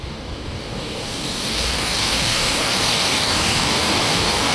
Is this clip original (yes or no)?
no